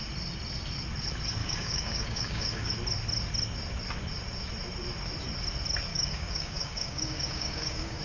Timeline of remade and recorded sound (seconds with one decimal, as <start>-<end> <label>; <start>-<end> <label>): 0.0-1.4 recorded; 1.4-2.7 remade; 2.7-5.9 recorded; 5.9-8.0 remade